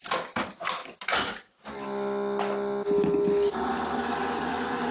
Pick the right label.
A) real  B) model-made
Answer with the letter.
A